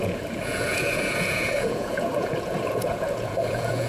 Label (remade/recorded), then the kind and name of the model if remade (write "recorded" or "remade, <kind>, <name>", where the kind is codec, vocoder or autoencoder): remade, vocoder, Vocos